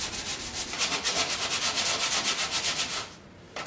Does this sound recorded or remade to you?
recorded